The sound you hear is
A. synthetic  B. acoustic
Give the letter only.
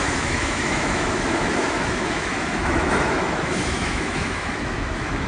A